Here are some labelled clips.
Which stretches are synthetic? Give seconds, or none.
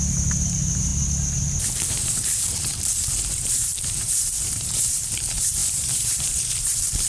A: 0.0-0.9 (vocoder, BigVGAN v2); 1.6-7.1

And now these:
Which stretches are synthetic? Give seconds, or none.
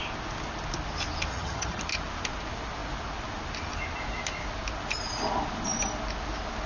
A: 1.3-1.8 (vocoder, HiFi-GAN)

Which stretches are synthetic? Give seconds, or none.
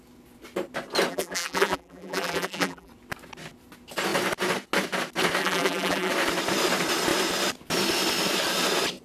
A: 1.1-2.9 (vocoder, BigVGAN v2); 5.4-6.1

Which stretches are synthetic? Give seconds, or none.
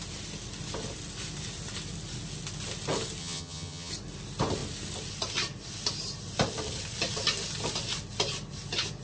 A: 3.2-3.9 (vocoder, HiFi-GAN)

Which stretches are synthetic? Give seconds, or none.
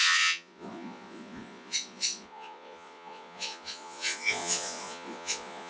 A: 0.0-5.7 (vocoder, Vocos)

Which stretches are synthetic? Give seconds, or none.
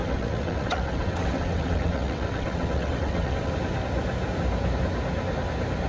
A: 0.0-3.5 (vocoder, WaveNeXt)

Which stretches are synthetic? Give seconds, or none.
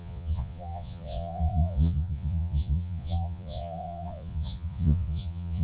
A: 0.0-5.6 (vocoder, Vocos)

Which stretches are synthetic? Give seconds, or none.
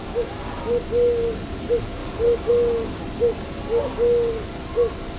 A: none